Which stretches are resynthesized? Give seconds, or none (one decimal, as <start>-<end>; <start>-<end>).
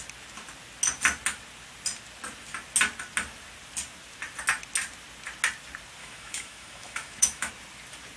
6.0-7.5